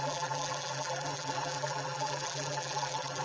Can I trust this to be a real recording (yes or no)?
no